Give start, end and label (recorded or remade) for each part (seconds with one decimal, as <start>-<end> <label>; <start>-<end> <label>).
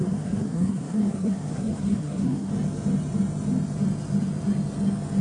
0.0-2.5 remade; 2.5-5.2 recorded